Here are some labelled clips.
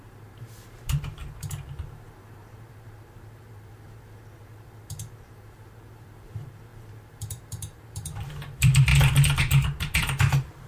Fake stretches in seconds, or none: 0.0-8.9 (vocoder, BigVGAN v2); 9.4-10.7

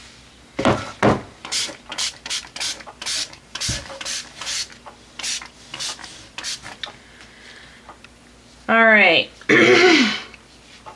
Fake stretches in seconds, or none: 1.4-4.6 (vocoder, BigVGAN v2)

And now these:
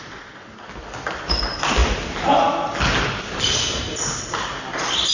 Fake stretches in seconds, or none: none

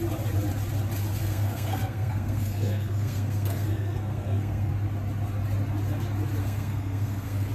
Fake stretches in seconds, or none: 1.2-4.7 (codec, SNAC); 6.4-7.5

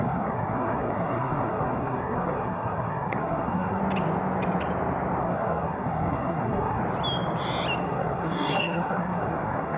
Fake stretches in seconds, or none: 0.0-3.8 (codec, SNAC); 5.2-6.8; 7.8-9.8

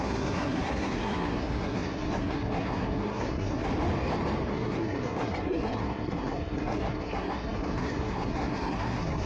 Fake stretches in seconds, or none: 0.0-3.7 (codec, SNAC); 4.5-9.3